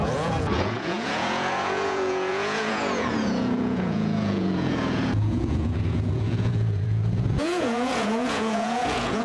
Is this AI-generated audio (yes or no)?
yes